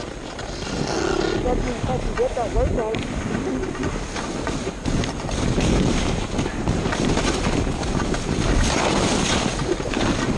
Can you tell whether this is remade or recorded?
recorded